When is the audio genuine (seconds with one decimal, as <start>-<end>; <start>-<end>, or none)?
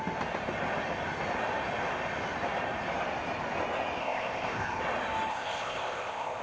0.0-4.0; 4.8-5.3